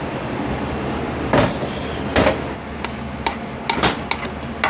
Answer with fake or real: real